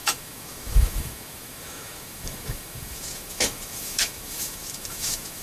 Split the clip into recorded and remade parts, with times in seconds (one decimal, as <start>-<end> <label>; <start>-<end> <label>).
0.0-5.4 remade

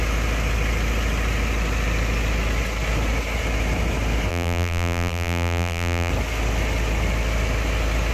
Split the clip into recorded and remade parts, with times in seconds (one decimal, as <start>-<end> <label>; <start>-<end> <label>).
0.0-4.3 recorded; 4.3-6.1 remade; 6.1-8.1 recorded

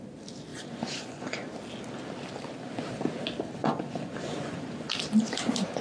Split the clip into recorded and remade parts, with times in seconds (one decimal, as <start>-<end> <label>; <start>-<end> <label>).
0.0-0.5 recorded; 0.5-1.5 remade; 1.5-3.6 recorded; 3.6-4.9 remade; 4.9-5.8 recorded